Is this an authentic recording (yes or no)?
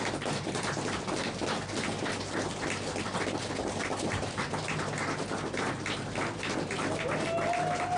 yes